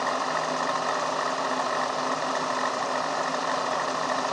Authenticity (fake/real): real